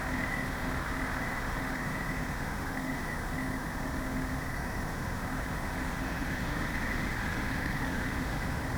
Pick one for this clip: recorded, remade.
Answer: remade